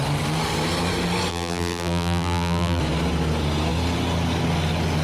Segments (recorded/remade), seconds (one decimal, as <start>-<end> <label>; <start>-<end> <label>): 0.0-1.3 recorded; 1.3-2.8 remade; 2.8-5.0 recorded

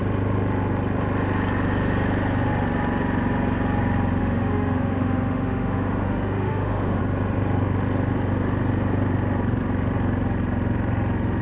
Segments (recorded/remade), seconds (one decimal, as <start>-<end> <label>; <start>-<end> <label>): 0.0-4.2 recorded; 4.2-7.0 remade; 7.0-11.4 recorded

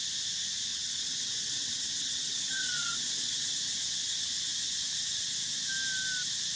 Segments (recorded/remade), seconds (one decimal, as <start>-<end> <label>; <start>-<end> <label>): 0.0-0.7 recorded; 0.7-3.5 remade; 3.5-6.6 recorded

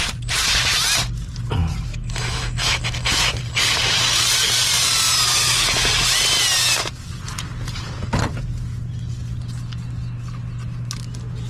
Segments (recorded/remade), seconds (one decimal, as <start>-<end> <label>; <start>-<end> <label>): 0.0-1.9 recorded; 1.9-3.4 remade; 3.4-5.4 recorded; 5.4-5.9 remade; 5.9-11.5 recorded

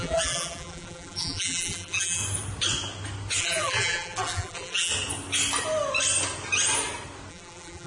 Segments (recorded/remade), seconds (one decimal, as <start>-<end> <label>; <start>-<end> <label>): 0.0-2.2 remade; 2.2-3.4 recorded; 3.4-4.9 remade; 4.9-7.3 recorded; 7.3-7.9 remade

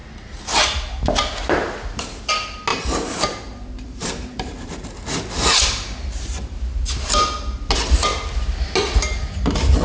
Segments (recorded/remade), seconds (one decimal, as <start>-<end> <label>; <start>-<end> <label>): 0.0-2.7 recorded; 2.7-6.7 remade; 6.7-9.8 recorded